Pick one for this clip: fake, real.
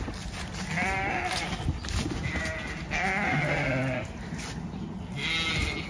real